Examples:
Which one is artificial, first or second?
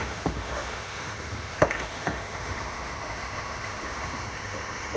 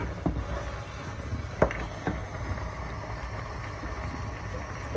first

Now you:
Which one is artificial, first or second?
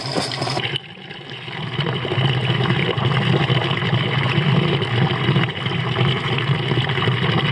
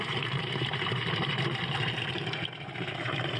second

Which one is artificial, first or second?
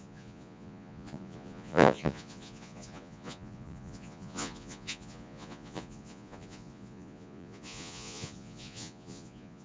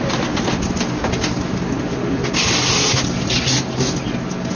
first